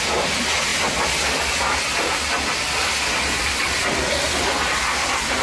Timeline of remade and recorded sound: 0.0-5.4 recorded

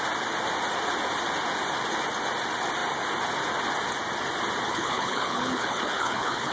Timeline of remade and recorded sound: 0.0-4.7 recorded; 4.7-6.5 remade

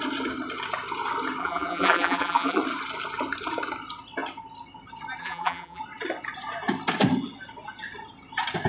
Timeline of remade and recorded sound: 0.0-1.4 recorded; 1.4-2.6 remade; 2.6-5.2 recorded; 5.2-5.8 remade; 5.8-8.7 recorded

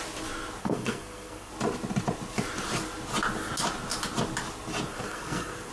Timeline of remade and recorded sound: 0.0-0.6 recorded; 0.6-1.5 remade; 1.5-4.9 recorded; 4.9-5.7 remade

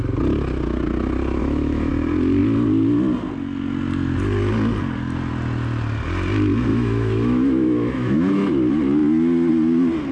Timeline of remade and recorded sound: 0.0-1.4 recorded; 1.4-1.9 remade; 1.9-6.7 recorded; 6.7-8.3 remade; 8.3-10.1 recorded

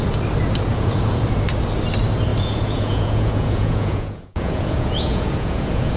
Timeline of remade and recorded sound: 0.0-0.7 recorded; 0.7-1.3 remade; 1.3-2.3 recorded; 2.3-6.0 remade

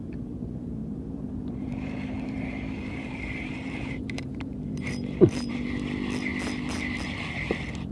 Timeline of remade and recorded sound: 0.0-0.8 recorded; 0.8-5.5 remade; 5.5-7.9 recorded

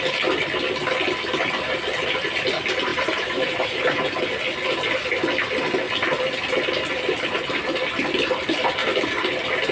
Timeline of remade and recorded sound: 0.0-2.9 recorded; 2.9-4.2 remade; 4.2-9.7 recorded